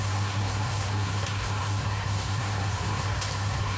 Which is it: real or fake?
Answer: fake